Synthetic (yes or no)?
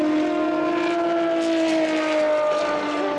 no